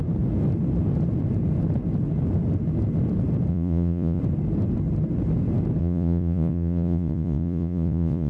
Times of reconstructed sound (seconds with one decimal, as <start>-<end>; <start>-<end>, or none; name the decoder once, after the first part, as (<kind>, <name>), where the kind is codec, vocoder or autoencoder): 3.5-4.2 (vocoder, Vocos); 5.8-8.3